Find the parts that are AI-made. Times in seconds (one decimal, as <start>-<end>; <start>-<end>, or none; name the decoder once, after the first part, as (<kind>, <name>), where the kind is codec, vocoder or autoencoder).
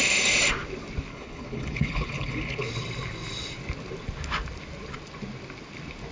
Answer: 1.1-2.7 (codec, HILCodec)